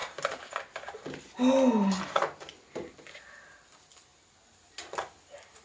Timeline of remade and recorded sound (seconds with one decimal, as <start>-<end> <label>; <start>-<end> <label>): 0.0-5.6 recorded